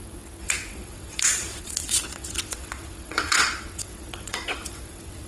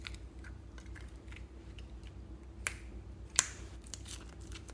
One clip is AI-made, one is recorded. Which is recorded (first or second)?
second